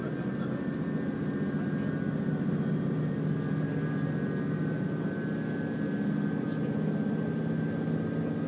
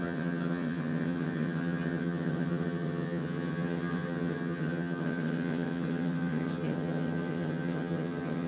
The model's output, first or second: second